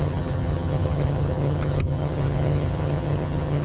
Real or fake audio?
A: fake